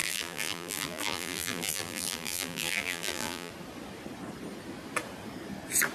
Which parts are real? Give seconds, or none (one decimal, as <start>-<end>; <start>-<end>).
3.5-5.9